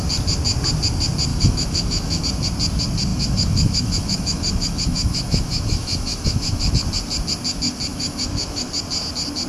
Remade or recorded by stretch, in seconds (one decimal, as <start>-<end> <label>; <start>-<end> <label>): 0.0-1.3 recorded; 1.3-2.2 remade; 2.2-3.1 recorded; 3.1-6.7 remade; 6.7-7.9 recorded; 7.9-8.7 remade; 8.7-9.5 recorded